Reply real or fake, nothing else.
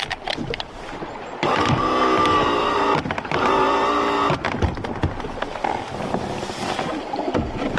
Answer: real